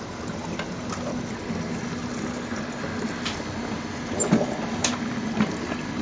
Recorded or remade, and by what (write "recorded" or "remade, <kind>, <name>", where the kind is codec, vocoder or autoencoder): recorded